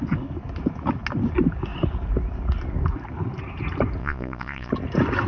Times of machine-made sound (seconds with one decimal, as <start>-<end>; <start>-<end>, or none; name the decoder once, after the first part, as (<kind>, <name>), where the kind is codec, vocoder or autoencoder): 4.0-4.7 (vocoder, Vocos)